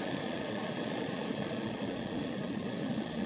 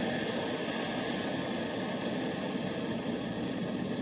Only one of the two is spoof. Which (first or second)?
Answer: first